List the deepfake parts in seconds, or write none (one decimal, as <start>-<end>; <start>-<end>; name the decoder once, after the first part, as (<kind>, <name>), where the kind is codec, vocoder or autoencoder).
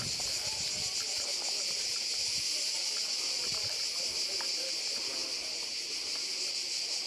none